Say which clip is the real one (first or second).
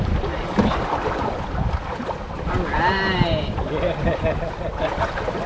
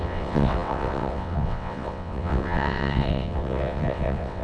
first